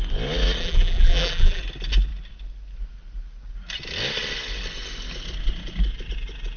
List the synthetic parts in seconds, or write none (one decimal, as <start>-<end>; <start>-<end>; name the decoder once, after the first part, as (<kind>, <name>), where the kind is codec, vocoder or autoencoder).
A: 0.6-1.6 (vocoder, BigVGAN v2)